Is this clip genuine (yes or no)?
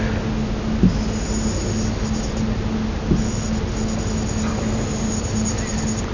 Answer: yes